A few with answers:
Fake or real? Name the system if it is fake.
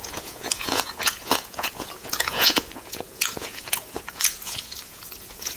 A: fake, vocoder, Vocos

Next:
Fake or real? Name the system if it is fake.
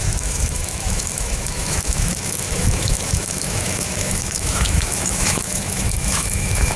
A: fake, autoencoder, DAC-VAE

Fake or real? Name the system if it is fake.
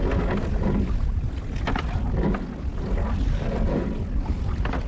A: real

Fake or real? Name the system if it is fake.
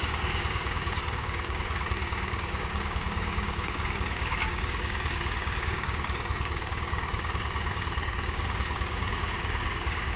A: fake, codec, DAC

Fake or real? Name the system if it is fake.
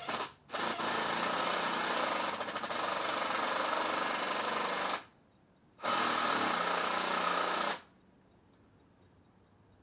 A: real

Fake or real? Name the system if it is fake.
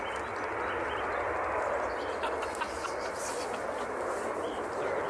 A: real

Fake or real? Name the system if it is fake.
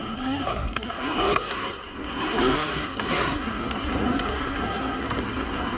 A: fake, codec, SNAC